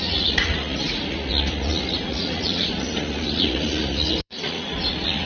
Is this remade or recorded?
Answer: remade